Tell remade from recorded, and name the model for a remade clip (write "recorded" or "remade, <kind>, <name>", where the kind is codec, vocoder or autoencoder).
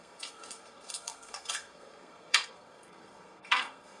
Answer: remade, codec, SNAC